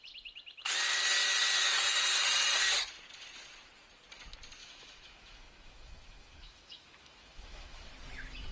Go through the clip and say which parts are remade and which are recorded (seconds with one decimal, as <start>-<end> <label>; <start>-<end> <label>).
0.0-4.6 recorded; 4.6-7.9 remade; 7.9-8.5 recorded